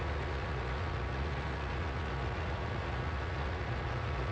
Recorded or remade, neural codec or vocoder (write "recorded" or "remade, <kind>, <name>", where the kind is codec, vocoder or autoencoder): remade, vocoder, Vocos